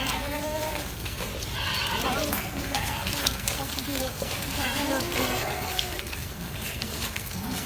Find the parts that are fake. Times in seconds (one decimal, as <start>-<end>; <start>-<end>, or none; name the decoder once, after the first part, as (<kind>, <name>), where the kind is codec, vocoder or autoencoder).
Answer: 0.0-1.3 (codec, SNAC); 2.3-7.7